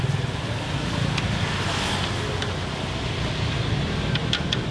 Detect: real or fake real